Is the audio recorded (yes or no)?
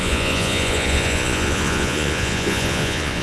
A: no